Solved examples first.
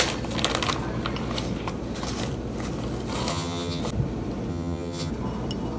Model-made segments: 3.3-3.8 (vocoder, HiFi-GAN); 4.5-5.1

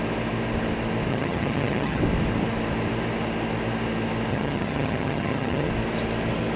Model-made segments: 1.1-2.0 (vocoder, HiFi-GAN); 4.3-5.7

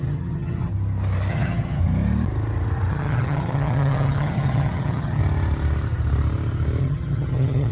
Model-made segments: 0.0-0.7 (vocoder, HiFi-GAN); 1.3-1.8; 2.9-5.2; 6.8-7.7

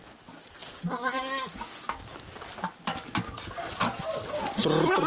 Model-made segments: none

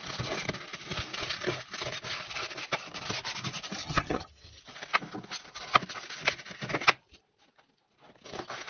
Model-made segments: 3.8-4.6 (vocoder, HiFi-GAN)